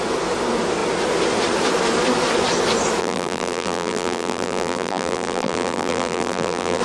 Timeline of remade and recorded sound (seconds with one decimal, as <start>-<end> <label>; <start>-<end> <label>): 0.0-3.0 recorded; 3.0-6.8 remade